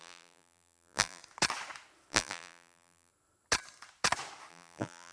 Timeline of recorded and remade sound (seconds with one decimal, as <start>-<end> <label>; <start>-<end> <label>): 0.0-1.2 remade; 1.2-2.1 recorded; 2.1-3.1 remade; 3.1-4.5 recorded; 4.5-5.1 remade

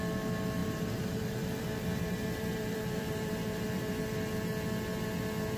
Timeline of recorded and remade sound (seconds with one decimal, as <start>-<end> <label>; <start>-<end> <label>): 0.0-0.6 recorded; 0.6-4.0 remade; 4.0-5.6 recorded

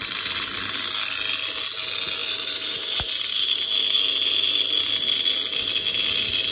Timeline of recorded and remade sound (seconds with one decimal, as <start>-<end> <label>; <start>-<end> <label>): 0.0-0.5 remade; 0.5-2.2 recorded; 2.2-3.0 remade; 3.0-6.5 recorded

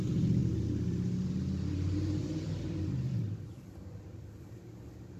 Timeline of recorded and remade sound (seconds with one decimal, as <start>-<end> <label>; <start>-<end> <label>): 0.0-2.2 recorded; 2.2-4.6 remade; 4.6-5.2 recorded

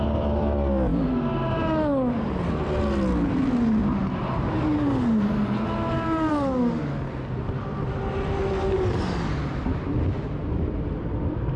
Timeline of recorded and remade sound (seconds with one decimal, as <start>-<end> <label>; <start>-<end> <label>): 0.0-11.6 recorded

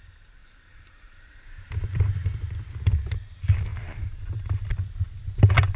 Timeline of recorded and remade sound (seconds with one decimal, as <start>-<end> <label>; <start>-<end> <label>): 0.0-0.4 recorded; 0.4-2.9 remade; 2.9-3.7 recorded; 3.7-4.6 remade; 4.6-5.8 recorded